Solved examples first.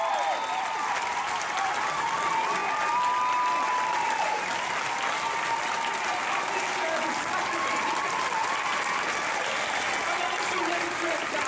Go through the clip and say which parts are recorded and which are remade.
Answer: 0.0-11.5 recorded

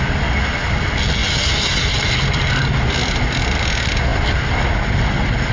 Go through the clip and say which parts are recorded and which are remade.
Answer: 0.0-5.5 recorded

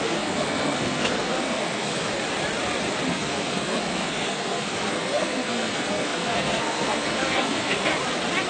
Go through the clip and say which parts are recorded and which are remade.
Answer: 0.0-2.1 remade; 2.1-3.1 recorded; 3.1-7.9 remade; 7.9-8.5 recorded

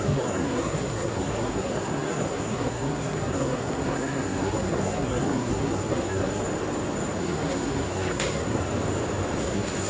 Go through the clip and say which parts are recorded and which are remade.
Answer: 0.0-6.4 remade; 6.4-7.2 recorded; 7.2-8.7 remade; 8.7-9.4 recorded; 9.4-9.9 remade

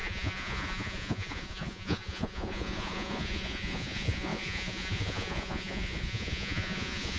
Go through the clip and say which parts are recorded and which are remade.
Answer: 0.0-7.2 remade

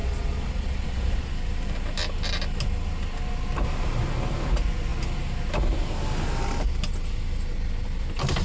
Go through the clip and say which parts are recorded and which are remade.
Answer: 0.0-1.3 remade; 1.3-8.4 recorded

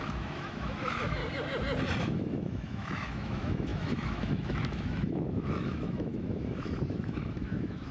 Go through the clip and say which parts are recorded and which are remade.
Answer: 0.0-1.2 remade; 1.2-2.0 recorded; 2.0-7.9 remade

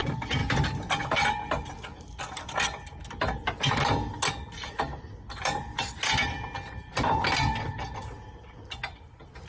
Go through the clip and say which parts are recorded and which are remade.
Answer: 0.0-9.5 recorded